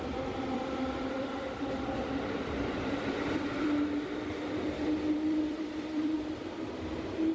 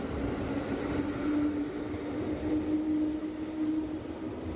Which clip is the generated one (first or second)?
first